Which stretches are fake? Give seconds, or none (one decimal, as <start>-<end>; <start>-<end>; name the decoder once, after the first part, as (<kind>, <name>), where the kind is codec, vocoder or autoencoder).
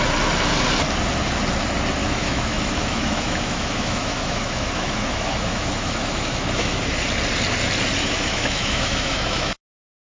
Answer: 2.0-6.8 (autoencoder, DAC-VAE); 8.0-9.6